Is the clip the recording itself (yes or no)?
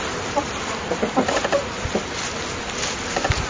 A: yes